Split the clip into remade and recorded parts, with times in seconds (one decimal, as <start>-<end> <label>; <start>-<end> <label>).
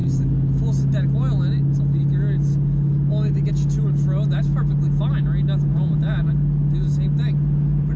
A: 0.0-5.7 recorded; 5.7-6.3 remade; 6.3-8.0 recorded